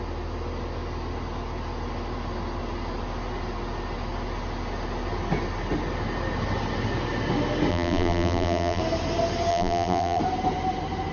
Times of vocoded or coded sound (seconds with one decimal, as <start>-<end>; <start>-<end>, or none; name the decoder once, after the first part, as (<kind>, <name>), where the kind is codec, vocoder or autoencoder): 7.7-8.8 (vocoder, BigVGAN v2); 9.5-10.2